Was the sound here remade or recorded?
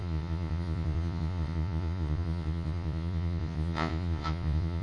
remade